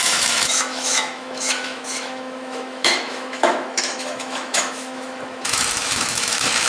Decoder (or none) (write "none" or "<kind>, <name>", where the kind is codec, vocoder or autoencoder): autoencoder, DAC-VAE